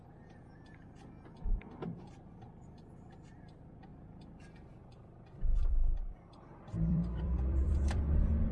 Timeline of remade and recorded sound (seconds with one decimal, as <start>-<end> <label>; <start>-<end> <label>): 0.0-3.9 recorded; 3.9-8.5 remade